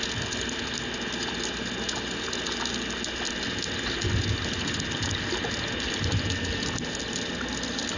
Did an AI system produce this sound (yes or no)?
no